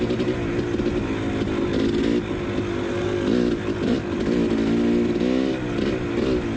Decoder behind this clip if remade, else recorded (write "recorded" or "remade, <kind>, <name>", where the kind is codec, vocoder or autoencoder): recorded